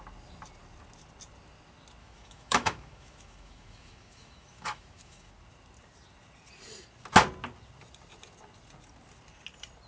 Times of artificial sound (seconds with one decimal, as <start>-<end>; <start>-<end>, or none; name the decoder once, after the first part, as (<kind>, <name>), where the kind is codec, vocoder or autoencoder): 2.0-5.3 (autoencoder, DAC-VAE)

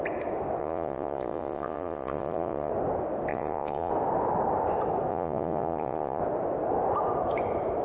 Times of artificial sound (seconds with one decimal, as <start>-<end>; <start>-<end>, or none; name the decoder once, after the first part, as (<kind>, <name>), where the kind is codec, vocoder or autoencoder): 0.6-2.7 (vocoder, Vocos); 3.3-3.9; 5.1-6.2

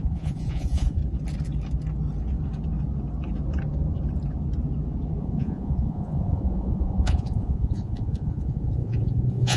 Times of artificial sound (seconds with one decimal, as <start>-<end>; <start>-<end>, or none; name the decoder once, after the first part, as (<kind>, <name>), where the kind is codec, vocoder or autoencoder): 0.0-1.0 (vocoder, Vocos); 5.2-9.6

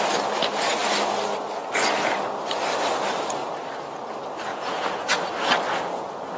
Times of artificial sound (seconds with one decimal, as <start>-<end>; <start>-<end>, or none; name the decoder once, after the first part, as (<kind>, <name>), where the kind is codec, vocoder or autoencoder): 4.5-5.2 (vocoder, Vocos)